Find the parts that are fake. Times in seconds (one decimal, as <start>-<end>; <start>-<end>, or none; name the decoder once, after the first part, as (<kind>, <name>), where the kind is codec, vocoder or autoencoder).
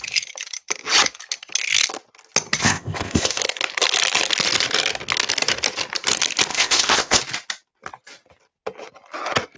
2.6-3.4 (codec, ZipCodec); 6.5-7.2